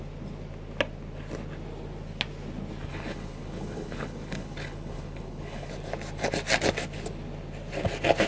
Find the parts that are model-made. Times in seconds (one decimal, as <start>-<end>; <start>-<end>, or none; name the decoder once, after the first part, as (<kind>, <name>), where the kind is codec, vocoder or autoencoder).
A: 2.9-5.7 (codec, HILCodec)